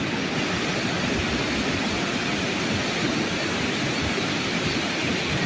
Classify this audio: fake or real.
real